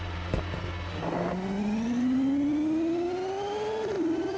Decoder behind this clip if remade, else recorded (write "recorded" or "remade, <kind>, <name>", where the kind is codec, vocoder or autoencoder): recorded